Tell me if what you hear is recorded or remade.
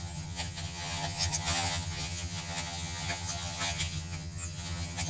remade